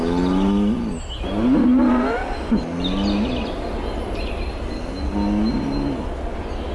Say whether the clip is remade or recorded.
recorded